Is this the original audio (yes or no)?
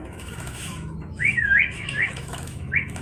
no